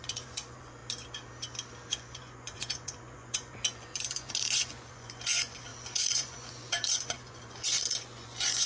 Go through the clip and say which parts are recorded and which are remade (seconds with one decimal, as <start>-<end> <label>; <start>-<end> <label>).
0.0-0.8 remade; 0.8-1.9 recorded; 1.9-8.7 remade